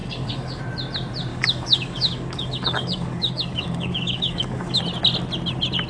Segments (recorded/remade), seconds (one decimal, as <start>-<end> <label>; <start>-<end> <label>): 0.0-0.6 remade; 0.6-1.3 recorded; 1.3-4.8 remade; 4.8-5.9 recorded